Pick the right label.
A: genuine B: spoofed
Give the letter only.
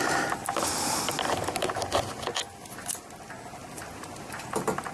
A